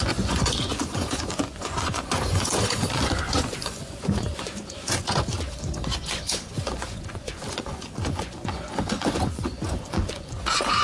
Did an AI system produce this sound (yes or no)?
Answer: yes